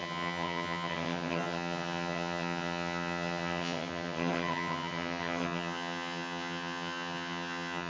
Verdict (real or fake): fake